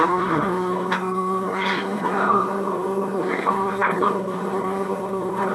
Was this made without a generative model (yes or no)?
no